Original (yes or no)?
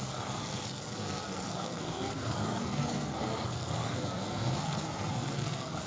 no